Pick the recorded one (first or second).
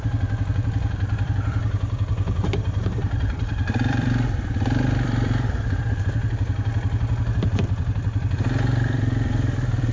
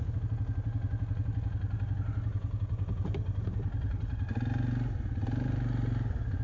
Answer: second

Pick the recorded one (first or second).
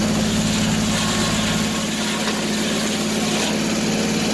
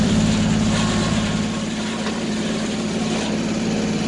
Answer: first